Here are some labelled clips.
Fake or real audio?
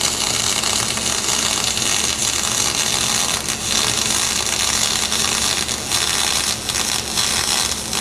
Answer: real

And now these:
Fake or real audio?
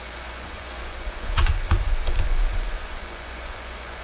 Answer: fake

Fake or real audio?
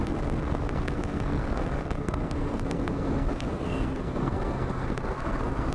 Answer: fake